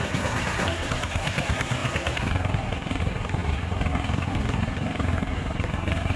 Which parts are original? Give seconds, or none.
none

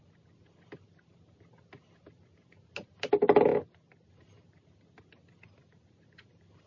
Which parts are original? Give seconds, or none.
0.0-6.7

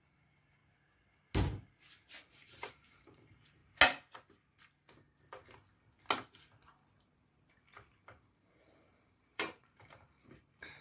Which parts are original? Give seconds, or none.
0.6-2.3; 3.6-8.0

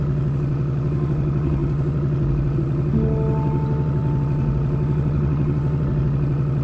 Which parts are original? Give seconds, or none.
0.0-6.6